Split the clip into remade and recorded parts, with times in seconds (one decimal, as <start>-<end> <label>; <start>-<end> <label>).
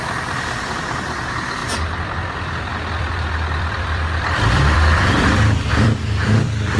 0.0-6.8 remade